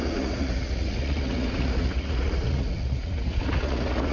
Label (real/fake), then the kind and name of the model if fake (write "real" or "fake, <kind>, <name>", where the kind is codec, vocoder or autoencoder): fake, vocoder, Vocos